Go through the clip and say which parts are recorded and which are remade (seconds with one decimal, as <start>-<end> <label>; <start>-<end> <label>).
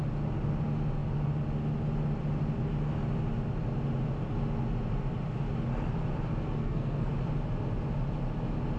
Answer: 0.0-6.6 recorded; 6.6-7.1 remade; 7.1-8.8 recorded